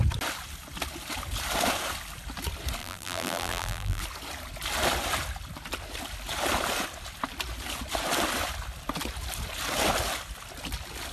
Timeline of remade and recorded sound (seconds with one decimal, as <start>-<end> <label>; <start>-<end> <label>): 0.0-2.8 recorded; 2.8-4.0 remade; 4.0-11.1 recorded